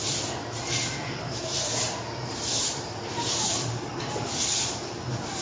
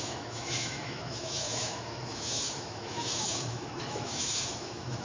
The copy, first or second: second